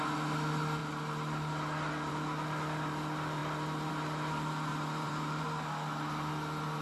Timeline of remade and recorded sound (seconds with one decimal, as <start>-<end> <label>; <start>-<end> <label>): 0.0-3.4 recorded; 3.4-3.9 remade; 3.9-4.7 recorded; 4.7-5.4 remade; 5.4-6.8 recorded